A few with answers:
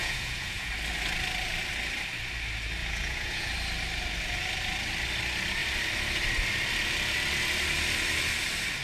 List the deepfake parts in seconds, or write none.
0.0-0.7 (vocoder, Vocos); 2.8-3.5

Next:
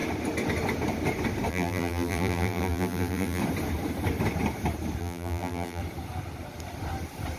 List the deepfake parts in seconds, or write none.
1.5-3.4 (vocoder, BigVGAN v2); 5.0-5.8

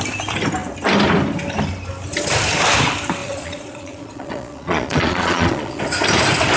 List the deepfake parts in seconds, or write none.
3.2-5.8 (vocoder, Vocos)

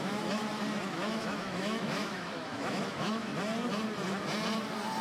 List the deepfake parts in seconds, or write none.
0.0-0.4 (autoencoder, DAC-VAE); 0.9-3.3

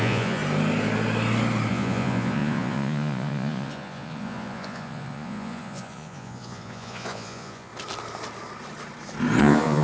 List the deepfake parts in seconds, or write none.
0.0-0.4 (vocoder, Vocos); 1.7-7.7; 9.4-9.8

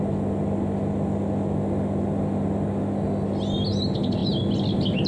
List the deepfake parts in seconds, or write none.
none

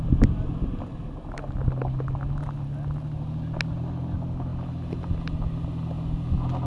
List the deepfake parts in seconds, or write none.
none

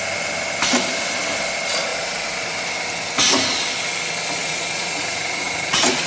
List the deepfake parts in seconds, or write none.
4.4-6.1 (vocoder, Vocos)